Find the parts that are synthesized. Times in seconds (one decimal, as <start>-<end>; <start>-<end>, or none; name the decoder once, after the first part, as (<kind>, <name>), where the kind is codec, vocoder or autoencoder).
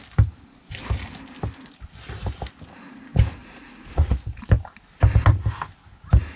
3.4-4.4 (vocoder, Vocos)